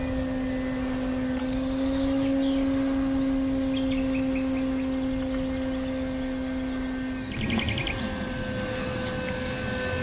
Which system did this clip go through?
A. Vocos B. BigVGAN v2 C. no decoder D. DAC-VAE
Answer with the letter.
C